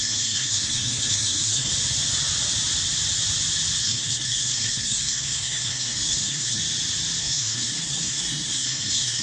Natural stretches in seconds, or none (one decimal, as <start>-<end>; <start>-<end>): 1.7-3.8; 6.6-7.2